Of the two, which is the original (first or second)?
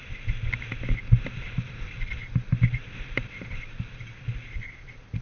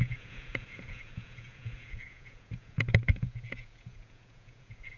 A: first